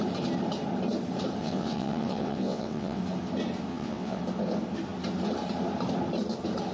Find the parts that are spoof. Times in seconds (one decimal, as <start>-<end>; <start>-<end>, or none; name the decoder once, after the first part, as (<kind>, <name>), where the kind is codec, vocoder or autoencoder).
1.4-3.0 (vocoder, WaveNeXt); 3.7-4.2